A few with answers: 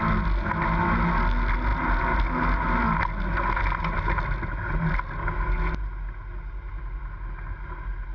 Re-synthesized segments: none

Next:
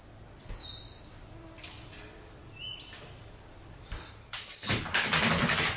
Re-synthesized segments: 0.6-4.1 (vocoder, BigVGAN v2)

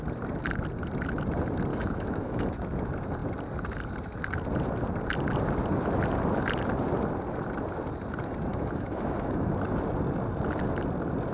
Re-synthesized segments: 1.7-2.5 (autoencoder, DAC-VAE); 8.5-9.5

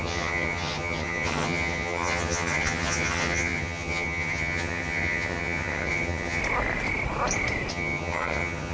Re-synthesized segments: 0.0-6.4 (vocoder, HiFi-GAN); 7.7-8.7

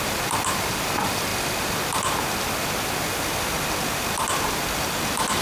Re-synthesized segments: none

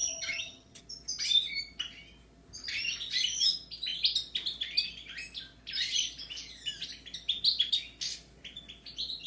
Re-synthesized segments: 0.0-0.8 (vocoder, HiFi-GAN)